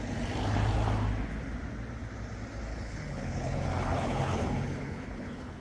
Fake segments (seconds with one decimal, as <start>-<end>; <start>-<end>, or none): 2.7-5.6